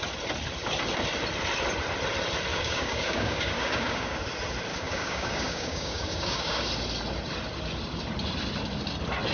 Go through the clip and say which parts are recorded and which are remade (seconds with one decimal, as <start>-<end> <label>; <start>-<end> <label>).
0.0-2.5 recorded; 2.5-4.2 remade; 4.2-4.7 recorded; 4.7-6.6 remade; 6.6-9.3 recorded